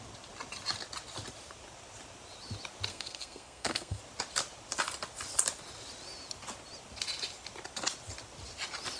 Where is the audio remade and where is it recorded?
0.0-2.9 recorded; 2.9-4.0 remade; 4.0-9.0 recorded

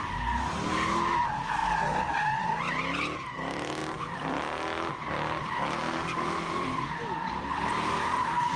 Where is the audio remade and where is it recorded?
0.0-1.6 recorded; 1.6-2.6 remade; 2.6-3.8 recorded; 3.8-7.3 remade; 7.3-8.6 recorded

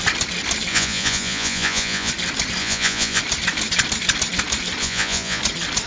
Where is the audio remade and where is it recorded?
0.0-0.7 recorded; 0.7-2.1 remade; 2.1-2.6 recorded; 2.6-3.2 remade; 3.2-4.8 recorded; 4.8-5.4 remade; 5.4-5.9 recorded

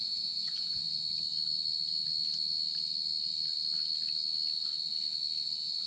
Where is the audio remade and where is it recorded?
0.0-0.8 remade; 0.8-5.9 recorded